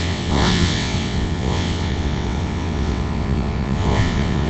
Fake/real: fake